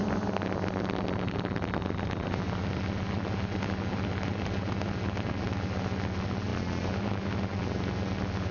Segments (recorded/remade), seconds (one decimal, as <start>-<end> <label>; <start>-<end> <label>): 0.0-8.5 recorded